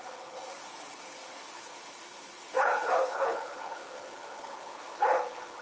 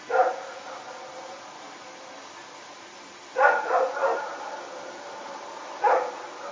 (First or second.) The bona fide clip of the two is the second